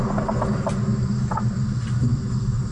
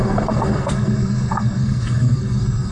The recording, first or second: first